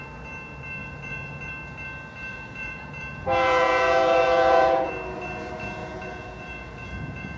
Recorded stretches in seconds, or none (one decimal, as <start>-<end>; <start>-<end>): 0.0-0.8; 1.5-2.3; 4.9-5.8